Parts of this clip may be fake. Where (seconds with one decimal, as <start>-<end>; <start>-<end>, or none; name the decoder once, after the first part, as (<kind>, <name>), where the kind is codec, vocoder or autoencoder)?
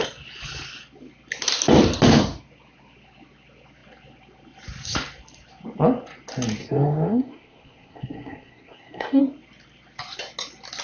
6.6-9.2 (codec, SNAC)